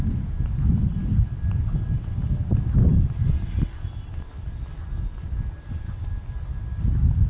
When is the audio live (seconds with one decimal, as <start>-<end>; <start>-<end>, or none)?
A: 0.0-7.3